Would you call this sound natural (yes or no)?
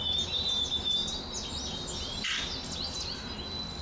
yes